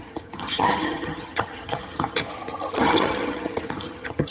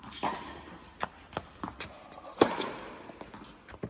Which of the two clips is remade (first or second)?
first